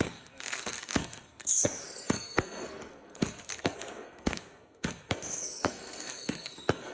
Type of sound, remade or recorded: remade